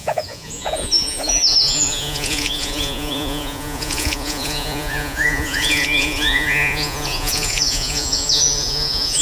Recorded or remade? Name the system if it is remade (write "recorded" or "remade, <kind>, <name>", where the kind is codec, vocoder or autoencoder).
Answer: remade, vocoder, Vocos